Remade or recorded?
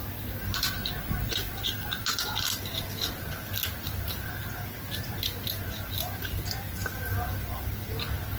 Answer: recorded